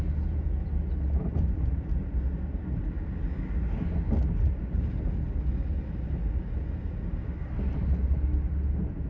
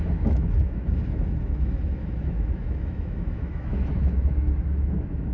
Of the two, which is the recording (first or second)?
first